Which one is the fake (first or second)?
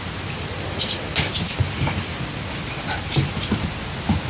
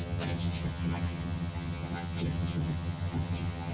second